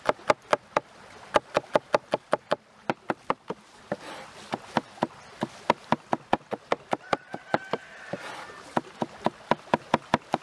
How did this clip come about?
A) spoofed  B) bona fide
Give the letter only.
B